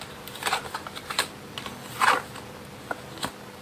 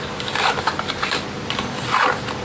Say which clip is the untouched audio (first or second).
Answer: first